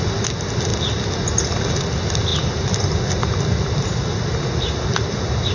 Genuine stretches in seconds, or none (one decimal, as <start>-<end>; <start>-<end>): 0.0-5.5